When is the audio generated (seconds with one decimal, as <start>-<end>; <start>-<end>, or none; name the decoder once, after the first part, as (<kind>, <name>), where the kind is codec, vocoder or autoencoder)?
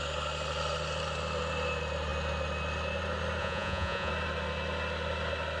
3.4-4.1 (vocoder, Vocos)